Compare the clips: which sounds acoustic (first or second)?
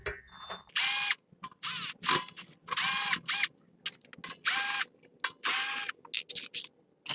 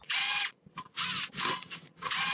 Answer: first